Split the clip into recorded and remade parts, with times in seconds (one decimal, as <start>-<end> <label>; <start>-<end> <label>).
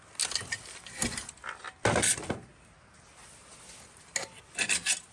0.0-5.1 recorded